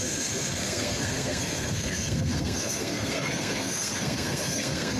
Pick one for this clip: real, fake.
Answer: fake